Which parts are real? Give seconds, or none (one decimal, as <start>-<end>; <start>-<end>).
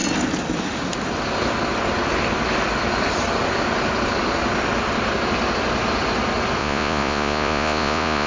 0.0-6.6